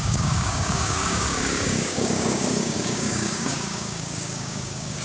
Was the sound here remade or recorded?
remade